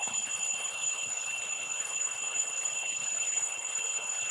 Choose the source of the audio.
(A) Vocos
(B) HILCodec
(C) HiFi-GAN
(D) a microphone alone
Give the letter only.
B